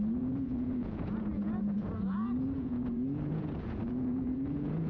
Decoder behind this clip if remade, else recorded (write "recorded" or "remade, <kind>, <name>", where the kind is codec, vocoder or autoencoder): remade, vocoder, Vocos